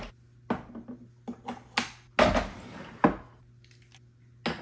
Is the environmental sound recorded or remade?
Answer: recorded